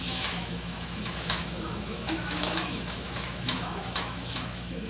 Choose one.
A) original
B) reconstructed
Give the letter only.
B